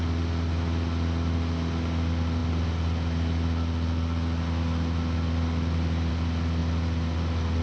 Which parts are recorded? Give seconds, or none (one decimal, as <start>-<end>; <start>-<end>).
0.0-7.6